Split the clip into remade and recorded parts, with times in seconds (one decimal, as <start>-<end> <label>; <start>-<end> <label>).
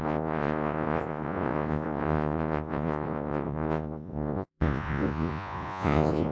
0.0-6.3 remade